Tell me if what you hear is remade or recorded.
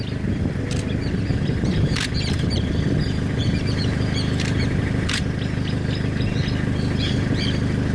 recorded